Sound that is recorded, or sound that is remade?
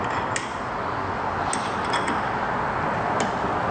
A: recorded